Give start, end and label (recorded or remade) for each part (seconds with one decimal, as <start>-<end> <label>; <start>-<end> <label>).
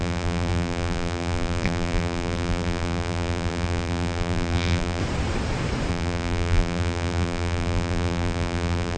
0.0-5.0 remade; 5.0-5.9 recorded; 5.9-9.0 remade